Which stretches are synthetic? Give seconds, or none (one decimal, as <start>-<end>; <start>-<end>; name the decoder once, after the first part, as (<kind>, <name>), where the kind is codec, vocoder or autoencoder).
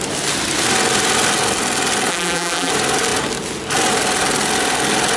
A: 2.1-2.7 (vocoder, BigVGAN v2)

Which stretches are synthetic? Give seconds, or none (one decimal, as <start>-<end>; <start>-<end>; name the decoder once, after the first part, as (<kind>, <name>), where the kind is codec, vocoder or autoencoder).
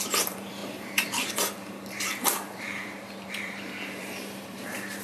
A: 0.0-5.0 (vocoder, BigVGAN v2)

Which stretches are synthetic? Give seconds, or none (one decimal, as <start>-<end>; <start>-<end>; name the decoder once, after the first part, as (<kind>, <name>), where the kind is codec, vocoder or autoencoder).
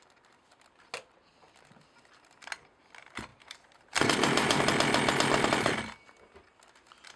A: 3.3-4.6 (vocoder, BigVGAN v2)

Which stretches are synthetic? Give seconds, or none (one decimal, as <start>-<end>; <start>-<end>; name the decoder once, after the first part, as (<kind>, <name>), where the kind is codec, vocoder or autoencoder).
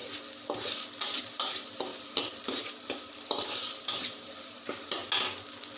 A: 1.2-5.0 (vocoder, BigVGAN v2)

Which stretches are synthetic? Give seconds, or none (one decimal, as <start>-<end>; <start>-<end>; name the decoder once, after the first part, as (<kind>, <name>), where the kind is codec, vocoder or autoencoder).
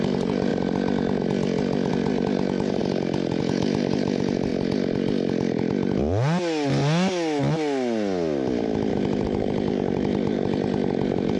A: 0.0-0.5 (vocoder, BigVGAN v2); 1.9-2.8; 3.4-4.5; 8.9-11.4